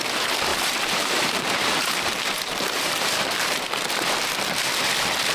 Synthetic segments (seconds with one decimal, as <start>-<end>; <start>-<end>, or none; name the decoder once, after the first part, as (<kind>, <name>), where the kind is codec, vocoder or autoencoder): 0.5-3.7 (vocoder, BigVGAN v2)

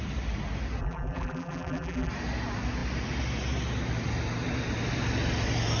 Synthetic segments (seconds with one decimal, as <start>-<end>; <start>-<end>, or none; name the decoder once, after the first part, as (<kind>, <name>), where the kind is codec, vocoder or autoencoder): 0.8-2.1 (vocoder, BigVGAN v2)

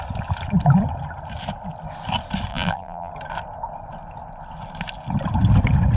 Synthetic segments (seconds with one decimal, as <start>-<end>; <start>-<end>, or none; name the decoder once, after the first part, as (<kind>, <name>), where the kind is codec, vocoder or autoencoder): 2.5-3.1 (vocoder, BigVGAN v2)

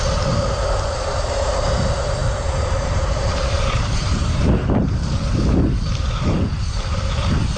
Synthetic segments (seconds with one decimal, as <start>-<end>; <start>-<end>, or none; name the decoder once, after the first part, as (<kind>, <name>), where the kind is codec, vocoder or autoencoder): 2.2-4.4 (vocoder, BigVGAN v2)

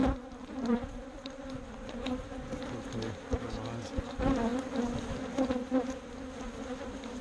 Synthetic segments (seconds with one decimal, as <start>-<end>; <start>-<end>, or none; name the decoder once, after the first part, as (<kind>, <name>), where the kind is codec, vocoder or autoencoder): 0.0-3.1 (vocoder, BigVGAN v2); 4.5-6.2

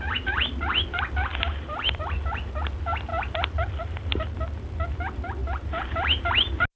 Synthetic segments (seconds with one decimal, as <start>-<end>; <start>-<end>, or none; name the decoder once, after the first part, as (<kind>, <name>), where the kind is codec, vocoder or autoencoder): 1.3-2.0 (vocoder, BigVGAN v2); 5.4-6.3